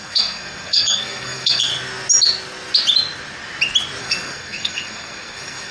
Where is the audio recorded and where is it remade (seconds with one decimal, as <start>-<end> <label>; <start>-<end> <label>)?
0.0-1.7 remade; 1.7-4.0 recorded; 4.0-5.7 remade